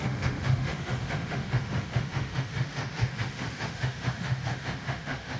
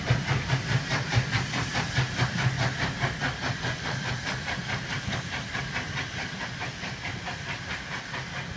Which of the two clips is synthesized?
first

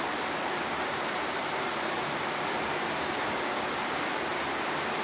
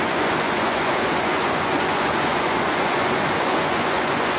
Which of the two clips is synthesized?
second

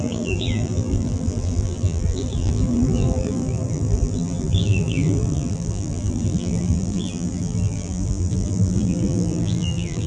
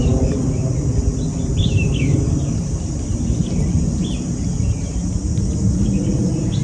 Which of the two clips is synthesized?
first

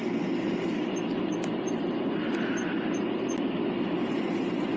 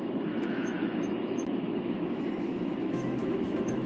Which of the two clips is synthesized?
second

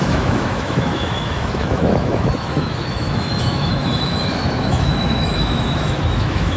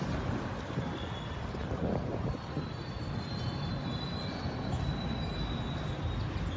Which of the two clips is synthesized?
first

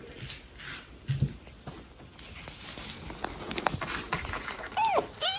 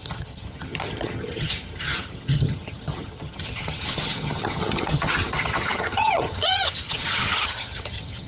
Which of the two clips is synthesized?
second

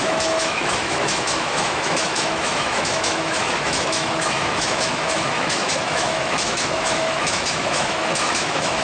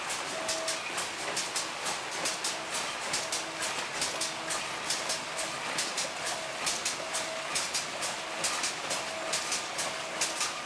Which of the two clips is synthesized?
first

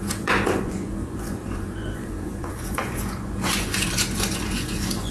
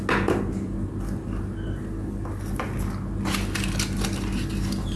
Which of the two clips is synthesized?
first